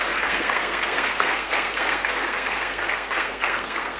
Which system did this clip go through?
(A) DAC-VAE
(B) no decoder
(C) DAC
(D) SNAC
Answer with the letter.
D